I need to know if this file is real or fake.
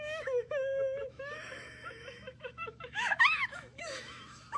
fake